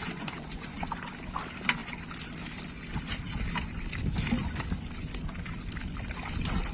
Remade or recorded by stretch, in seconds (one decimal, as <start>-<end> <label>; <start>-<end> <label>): 0.0-0.9 remade; 0.9-6.7 recorded